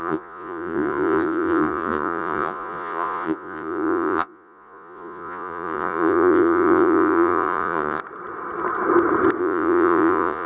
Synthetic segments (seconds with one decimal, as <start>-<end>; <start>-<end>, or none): 0.0-8.0; 9.4-10.5